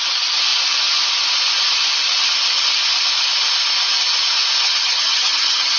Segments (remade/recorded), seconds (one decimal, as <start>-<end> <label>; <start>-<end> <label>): 0.0-4.6 recorded; 4.6-5.8 remade

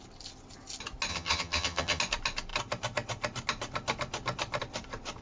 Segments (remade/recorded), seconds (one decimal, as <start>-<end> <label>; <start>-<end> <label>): 0.0-1.1 recorded; 1.1-2.0 remade; 2.0-5.2 recorded

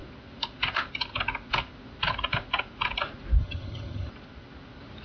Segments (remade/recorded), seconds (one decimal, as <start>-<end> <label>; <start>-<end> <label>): 0.0-3.4 recorded; 3.4-4.1 remade; 4.1-5.0 recorded